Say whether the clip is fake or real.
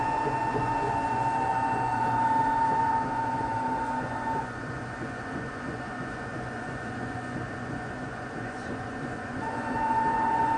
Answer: fake